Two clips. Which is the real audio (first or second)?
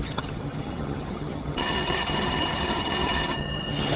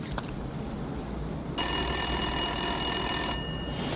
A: second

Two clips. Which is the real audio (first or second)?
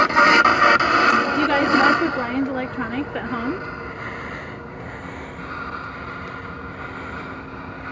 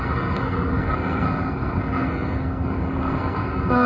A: first